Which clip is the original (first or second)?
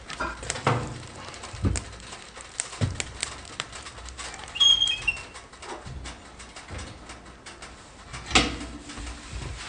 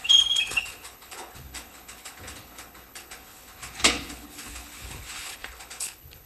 first